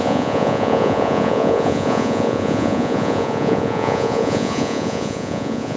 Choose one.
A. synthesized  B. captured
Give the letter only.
A